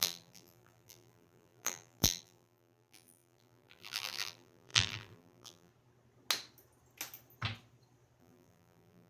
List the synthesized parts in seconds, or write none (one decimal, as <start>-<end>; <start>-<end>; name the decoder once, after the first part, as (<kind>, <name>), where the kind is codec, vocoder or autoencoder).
0.0-5.7 (vocoder, BigVGAN v2); 8.2-9.1